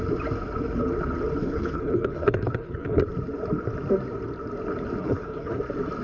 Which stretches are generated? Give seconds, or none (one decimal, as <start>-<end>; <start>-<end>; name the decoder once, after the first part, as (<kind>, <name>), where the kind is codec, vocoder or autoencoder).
1.4-3.0 (codec, HILCodec); 5.0-5.6